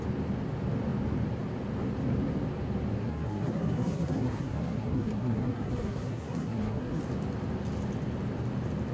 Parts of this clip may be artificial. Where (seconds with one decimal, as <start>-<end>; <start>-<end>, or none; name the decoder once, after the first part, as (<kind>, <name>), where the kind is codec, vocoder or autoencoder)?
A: 3.0-7.0 (codec, SNAC)